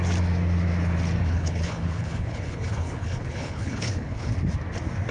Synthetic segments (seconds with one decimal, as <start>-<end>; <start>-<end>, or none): 1.2-4.3